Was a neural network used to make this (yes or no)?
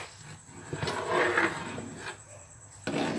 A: no